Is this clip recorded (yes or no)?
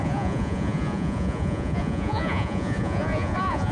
no